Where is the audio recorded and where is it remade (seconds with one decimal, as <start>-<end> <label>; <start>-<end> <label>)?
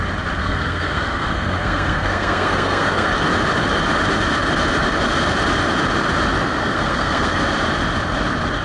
0.0-0.4 recorded; 0.4-3.1 remade; 3.1-6.6 recorded; 6.6-7.4 remade; 7.4-8.6 recorded